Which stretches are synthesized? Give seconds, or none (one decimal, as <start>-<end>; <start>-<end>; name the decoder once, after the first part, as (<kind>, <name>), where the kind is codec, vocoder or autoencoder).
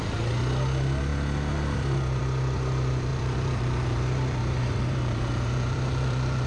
3.1-6.5 (vocoder, BigVGAN v2)